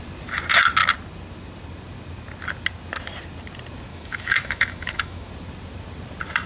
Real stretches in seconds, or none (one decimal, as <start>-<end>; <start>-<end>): 0.0-3.9; 5.3-6.5